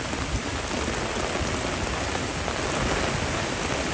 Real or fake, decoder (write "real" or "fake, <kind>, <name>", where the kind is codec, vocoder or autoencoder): real